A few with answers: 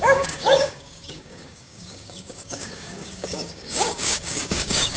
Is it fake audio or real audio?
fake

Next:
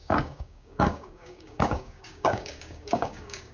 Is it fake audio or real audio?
fake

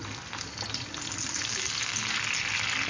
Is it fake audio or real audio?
real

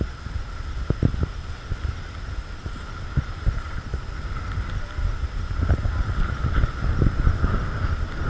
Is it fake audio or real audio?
real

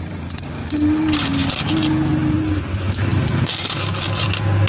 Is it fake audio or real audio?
real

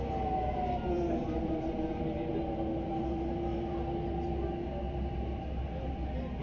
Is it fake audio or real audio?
real